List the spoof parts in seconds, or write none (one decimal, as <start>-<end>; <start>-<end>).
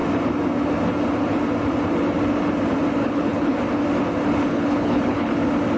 3.0-3.6; 4.5-5.3